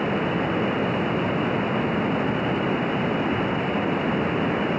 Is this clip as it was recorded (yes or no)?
yes